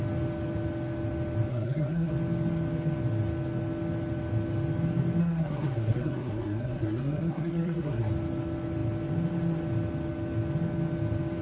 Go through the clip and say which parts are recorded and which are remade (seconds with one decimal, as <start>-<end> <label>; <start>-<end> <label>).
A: 0.0-1.5 recorded; 1.5-2.1 remade; 2.1-5.2 recorded; 5.2-8.1 remade; 8.1-11.4 recorded

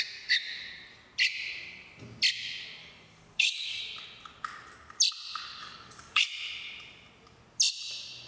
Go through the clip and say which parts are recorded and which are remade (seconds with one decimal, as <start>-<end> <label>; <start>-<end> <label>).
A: 0.0-2.8 recorded; 2.8-3.8 remade; 3.8-5.6 recorded; 5.6-6.2 remade; 6.2-8.3 recorded

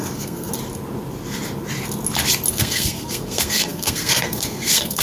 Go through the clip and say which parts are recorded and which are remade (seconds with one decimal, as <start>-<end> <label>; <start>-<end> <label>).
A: 0.0-0.5 remade; 0.5-2.5 recorded; 2.5-5.0 remade

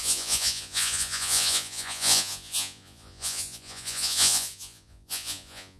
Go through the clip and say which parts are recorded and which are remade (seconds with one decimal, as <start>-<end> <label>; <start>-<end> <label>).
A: 0.0-5.8 remade

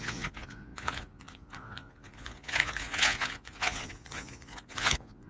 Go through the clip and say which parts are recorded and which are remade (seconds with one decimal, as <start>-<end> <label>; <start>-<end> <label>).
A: 0.0-5.3 remade

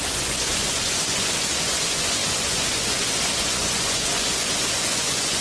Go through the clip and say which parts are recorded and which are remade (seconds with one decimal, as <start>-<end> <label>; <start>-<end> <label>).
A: 0.0-5.4 remade